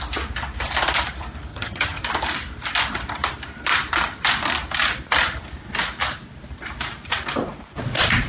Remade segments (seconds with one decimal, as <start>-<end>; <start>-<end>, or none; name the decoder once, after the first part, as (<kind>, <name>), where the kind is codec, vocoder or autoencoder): 1.5-2.0 (vocoder, HiFi-GAN)